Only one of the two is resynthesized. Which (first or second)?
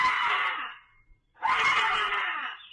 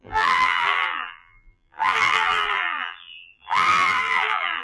second